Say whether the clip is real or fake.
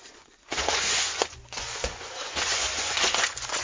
fake